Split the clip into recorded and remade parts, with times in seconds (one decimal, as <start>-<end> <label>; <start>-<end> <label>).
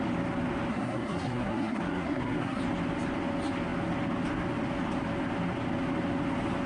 0.0-0.7 recorded; 0.7-2.6 remade; 2.6-6.7 recorded